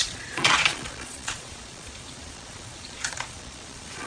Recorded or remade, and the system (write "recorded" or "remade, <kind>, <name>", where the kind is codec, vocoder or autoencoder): remade, vocoder, Vocos